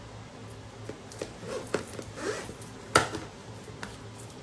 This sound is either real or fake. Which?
real